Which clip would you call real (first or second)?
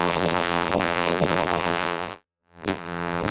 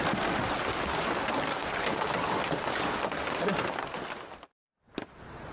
second